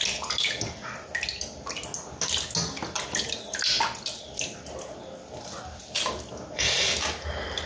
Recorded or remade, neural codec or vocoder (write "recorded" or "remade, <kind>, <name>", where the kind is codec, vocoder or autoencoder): recorded